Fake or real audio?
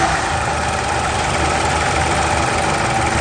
real